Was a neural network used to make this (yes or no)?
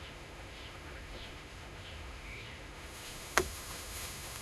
yes